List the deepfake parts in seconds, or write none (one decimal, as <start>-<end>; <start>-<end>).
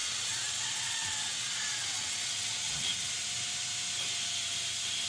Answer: 0.0-3.1